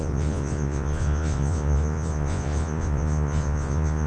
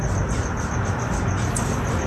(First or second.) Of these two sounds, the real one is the second